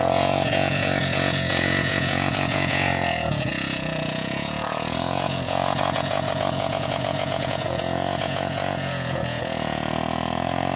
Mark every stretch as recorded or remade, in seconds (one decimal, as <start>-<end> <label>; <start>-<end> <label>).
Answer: 0.0-10.8 remade